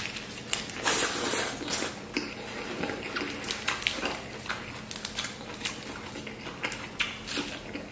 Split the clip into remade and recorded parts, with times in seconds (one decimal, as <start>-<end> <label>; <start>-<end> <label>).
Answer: 0.0-7.9 recorded